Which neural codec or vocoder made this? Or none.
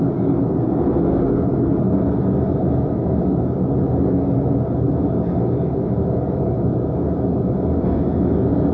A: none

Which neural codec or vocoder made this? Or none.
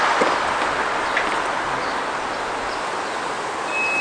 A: none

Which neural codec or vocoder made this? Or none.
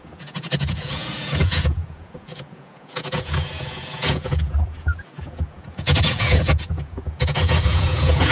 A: vocoder, Vocos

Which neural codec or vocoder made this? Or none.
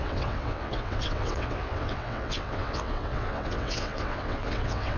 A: vocoder, WaveNeXt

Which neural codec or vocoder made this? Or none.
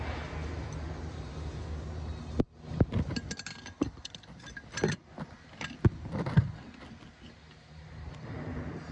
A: none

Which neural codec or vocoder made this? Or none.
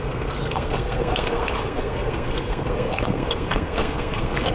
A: codec, SNAC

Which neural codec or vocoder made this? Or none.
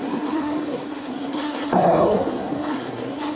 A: codec, SNAC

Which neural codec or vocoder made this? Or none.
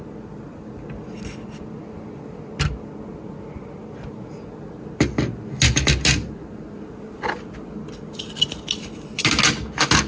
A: none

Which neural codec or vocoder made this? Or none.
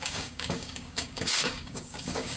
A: codec, DAC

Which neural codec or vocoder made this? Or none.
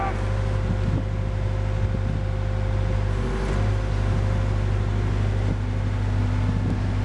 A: none